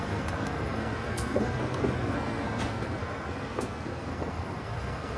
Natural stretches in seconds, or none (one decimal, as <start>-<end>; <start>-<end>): none